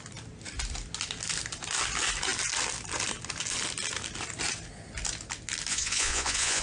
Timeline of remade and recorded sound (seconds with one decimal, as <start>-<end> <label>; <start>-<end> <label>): 0.0-5.7 recorded; 5.7-6.6 remade